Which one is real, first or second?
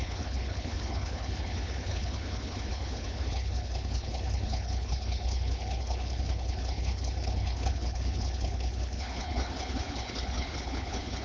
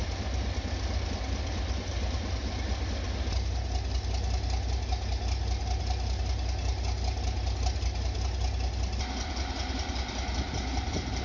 second